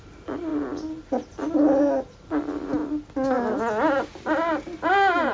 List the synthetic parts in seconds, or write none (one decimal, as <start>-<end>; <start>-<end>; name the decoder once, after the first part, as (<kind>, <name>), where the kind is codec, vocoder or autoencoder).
none